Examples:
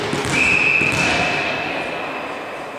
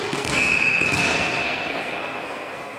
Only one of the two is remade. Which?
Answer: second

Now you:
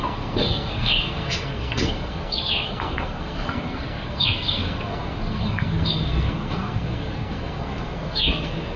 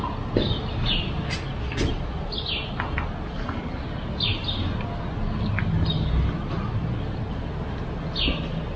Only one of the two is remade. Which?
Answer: first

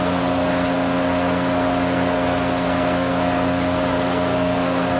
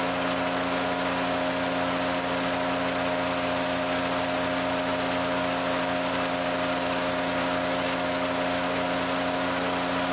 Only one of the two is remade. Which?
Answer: first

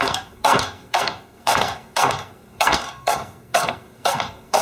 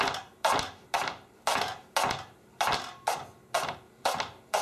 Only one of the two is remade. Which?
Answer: first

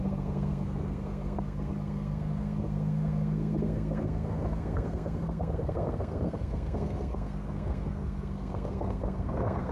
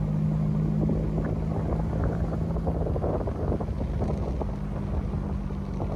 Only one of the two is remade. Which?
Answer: first